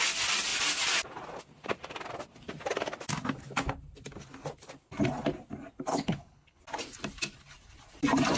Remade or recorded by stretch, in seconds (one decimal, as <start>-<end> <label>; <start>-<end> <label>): 0.0-5.9 recorded; 5.9-6.6 remade; 6.6-8.4 recorded